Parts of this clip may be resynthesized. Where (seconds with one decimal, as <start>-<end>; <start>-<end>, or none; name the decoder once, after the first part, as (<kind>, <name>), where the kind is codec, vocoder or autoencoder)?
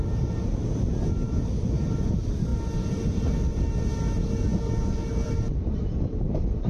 none